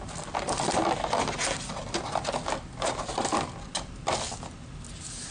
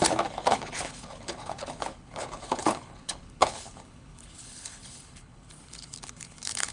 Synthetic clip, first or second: second